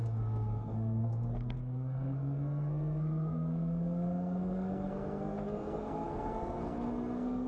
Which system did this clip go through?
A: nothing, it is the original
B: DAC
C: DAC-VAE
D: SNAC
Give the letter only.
D